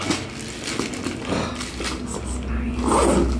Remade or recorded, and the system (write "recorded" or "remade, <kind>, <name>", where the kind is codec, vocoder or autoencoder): recorded